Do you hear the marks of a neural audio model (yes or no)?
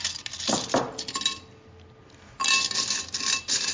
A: no